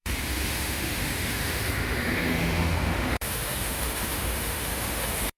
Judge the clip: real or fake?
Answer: fake